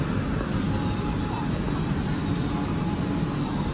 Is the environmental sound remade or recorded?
recorded